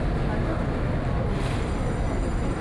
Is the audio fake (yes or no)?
no